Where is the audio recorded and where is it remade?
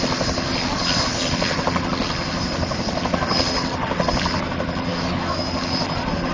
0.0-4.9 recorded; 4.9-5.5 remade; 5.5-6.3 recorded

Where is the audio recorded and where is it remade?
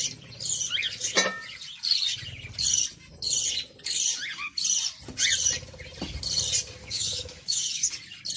0.0-6.8 recorded; 6.8-7.9 remade; 7.9-8.4 recorded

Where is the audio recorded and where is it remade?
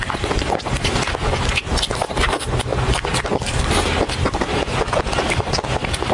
0.0-6.1 recorded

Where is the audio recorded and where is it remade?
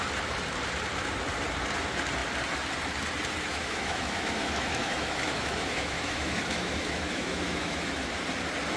0.0-3.5 recorded; 3.5-8.2 remade; 8.2-8.8 recorded